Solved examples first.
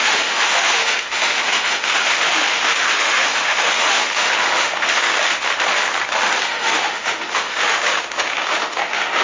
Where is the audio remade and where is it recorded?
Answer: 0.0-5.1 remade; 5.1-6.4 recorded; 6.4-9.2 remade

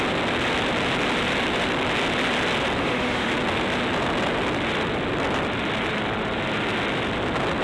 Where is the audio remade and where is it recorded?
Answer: 0.0-2.8 recorded; 2.8-3.3 remade; 3.3-7.6 recorded

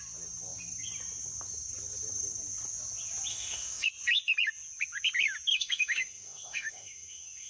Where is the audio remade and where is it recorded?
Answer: 0.0-3.3 recorded; 3.3-3.9 remade; 3.9-5.5 recorded; 5.5-7.5 remade